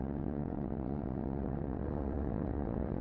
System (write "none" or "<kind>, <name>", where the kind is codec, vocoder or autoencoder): vocoder, WaveNeXt